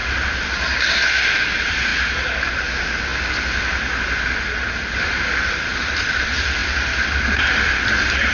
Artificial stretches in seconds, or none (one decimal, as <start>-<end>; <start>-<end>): 0.0-8.3